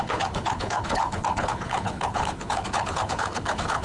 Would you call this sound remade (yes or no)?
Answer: yes